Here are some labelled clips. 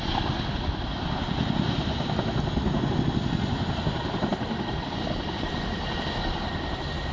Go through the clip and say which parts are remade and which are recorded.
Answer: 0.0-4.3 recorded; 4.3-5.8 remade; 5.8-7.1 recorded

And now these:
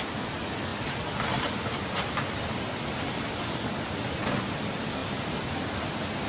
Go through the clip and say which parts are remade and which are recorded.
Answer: 0.0-6.3 recorded

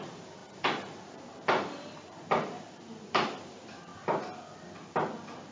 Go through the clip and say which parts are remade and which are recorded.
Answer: 0.0-3.9 remade; 3.9-5.5 recorded

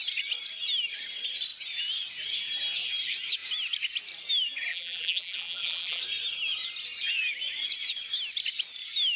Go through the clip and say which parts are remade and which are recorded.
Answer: 0.0-4.7 recorded; 4.7-6.0 remade; 6.0-9.2 recorded

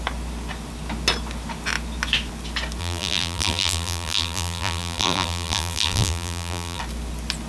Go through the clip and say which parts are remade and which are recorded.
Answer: 0.0-2.8 recorded; 2.8-6.8 remade; 6.8-7.5 recorded

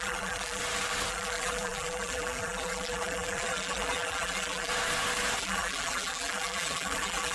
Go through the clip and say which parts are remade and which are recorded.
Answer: 0.0-0.6 remade; 0.6-1.1 recorded; 1.1-4.7 remade; 4.7-5.4 recorded; 5.4-7.3 remade

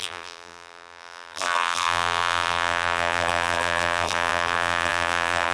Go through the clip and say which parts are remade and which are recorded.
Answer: 0.0-5.5 remade